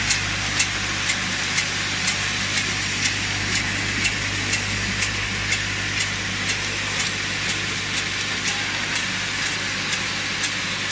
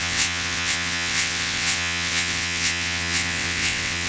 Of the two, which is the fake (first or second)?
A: second